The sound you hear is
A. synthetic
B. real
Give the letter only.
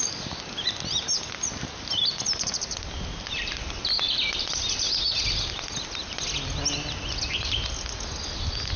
B